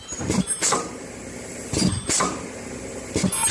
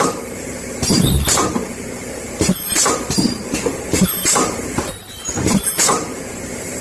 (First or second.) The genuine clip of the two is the first